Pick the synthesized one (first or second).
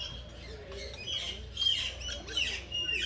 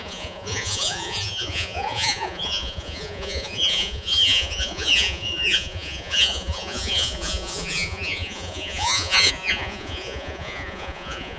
second